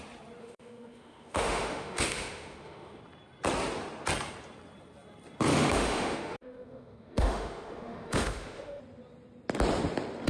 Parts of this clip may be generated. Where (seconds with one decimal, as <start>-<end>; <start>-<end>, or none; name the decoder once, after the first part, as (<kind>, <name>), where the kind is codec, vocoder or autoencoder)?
0.4-3.0 (autoencoder, DAC-VAE); 5.5-8.8